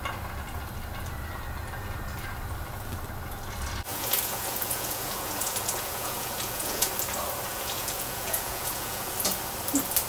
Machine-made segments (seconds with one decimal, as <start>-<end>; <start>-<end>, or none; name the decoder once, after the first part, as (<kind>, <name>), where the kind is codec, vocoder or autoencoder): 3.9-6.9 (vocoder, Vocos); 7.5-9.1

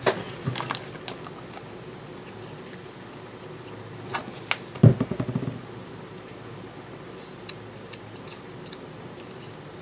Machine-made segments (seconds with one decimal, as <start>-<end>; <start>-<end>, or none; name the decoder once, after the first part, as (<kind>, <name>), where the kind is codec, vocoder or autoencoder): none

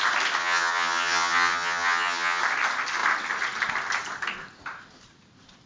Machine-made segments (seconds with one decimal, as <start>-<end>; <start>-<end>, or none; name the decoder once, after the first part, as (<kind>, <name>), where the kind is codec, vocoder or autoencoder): 0.4-2.4 (vocoder, HiFi-GAN)

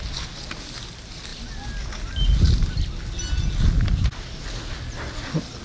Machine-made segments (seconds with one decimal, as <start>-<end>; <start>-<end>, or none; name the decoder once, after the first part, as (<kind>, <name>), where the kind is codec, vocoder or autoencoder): none

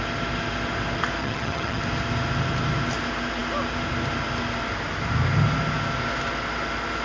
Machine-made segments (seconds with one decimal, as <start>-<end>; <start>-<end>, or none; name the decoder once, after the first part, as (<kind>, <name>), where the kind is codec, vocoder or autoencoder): 1.2-1.8 (vocoder, HiFi-GAN)